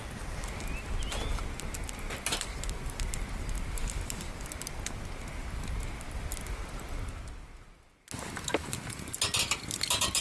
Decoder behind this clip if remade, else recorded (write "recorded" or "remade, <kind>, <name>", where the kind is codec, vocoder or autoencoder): recorded